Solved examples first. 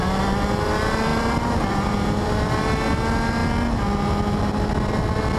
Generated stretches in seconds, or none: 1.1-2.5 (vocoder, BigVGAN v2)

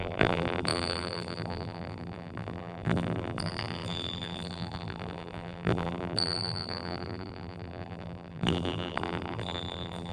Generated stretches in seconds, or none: 0.0-10.1 (vocoder, BigVGAN v2)

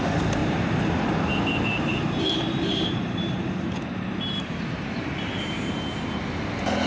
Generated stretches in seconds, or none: 0.4-1.4 (vocoder, BigVGAN v2); 1.9-5.3

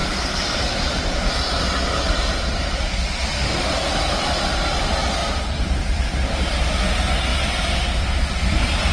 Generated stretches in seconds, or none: 0.0-4.8 (vocoder, BigVGAN v2); 5.2-6.8; 7.3-8.9

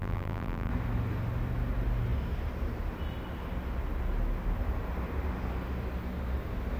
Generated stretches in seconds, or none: 0.0-0.7 (vocoder, BigVGAN v2)

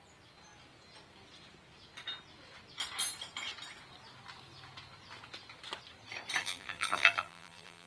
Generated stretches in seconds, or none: 6.4-7.9 (vocoder, BigVGAN v2)

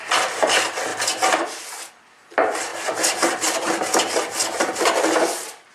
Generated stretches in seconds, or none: none